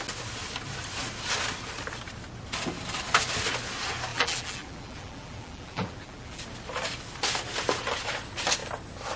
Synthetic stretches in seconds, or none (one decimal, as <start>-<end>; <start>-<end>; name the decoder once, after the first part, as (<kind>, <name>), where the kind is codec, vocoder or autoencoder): 4.1-6.4 (vocoder, BigVGAN v2)